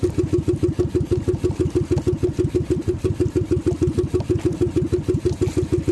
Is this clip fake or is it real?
real